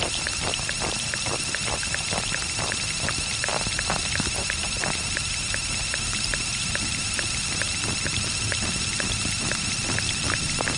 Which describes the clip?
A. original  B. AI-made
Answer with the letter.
A